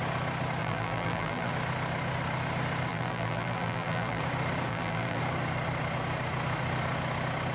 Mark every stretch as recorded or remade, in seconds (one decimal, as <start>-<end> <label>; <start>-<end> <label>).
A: 0.0-0.6 recorded; 0.6-1.5 remade; 1.5-2.9 recorded; 2.9-4.2 remade; 4.2-4.7 recorded; 4.7-5.2 remade; 5.2-7.5 recorded

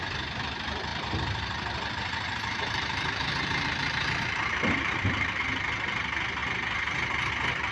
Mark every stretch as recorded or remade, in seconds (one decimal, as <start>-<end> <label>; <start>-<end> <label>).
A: 0.0-0.9 recorded; 0.9-5.4 remade; 5.4-7.7 recorded

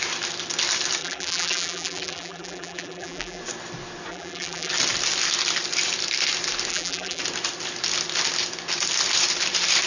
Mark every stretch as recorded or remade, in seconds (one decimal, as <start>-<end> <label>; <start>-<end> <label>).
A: 0.0-1.0 recorded; 1.0-3.4 remade; 3.4-4.1 recorded; 4.1-4.7 remade; 4.7-6.7 recorded; 6.7-7.2 remade; 7.2-9.9 recorded

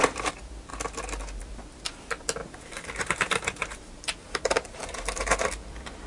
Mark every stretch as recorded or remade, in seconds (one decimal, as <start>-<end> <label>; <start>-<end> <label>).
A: 0.0-2.4 recorded; 2.4-6.1 remade

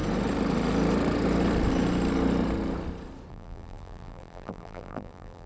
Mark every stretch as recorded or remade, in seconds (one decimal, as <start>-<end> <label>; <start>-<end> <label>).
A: 0.0-3.3 recorded; 3.3-5.5 remade

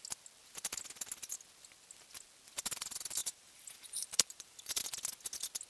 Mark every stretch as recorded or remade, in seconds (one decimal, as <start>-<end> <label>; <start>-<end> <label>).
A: 0.0-3.2 recorded; 3.2-4.8 remade; 4.8-5.7 recorded

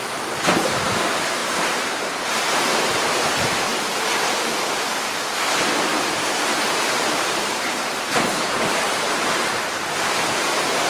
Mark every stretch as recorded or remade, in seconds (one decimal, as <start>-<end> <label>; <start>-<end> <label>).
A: 0.0-3.7 remade; 3.7-5.0 recorded; 5.0-10.9 remade

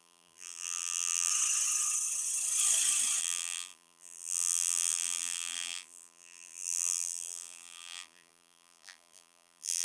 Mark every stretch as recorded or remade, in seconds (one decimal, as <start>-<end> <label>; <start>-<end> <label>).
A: 0.0-1.3 remade; 1.3-3.2 recorded; 3.2-9.8 remade